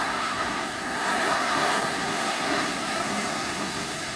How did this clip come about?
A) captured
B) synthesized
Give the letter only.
B